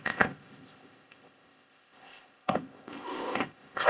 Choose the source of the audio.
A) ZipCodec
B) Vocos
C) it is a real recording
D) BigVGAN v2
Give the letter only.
A